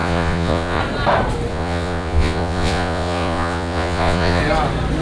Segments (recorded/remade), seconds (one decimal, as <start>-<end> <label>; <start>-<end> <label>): 0.0-0.8 remade; 0.8-1.5 recorded; 1.5-4.4 remade; 4.4-5.0 recorded